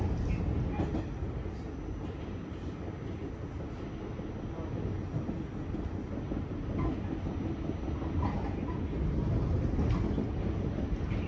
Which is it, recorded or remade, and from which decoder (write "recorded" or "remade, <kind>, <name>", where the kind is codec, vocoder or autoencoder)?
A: recorded